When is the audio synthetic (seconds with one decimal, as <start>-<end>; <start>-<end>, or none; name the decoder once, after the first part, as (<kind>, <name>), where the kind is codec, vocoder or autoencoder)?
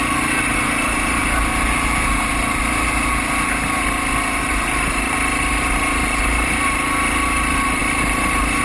0.0-1.2 (vocoder, BigVGAN v2); 4.4-8.6